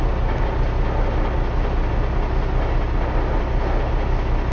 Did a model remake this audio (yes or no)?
no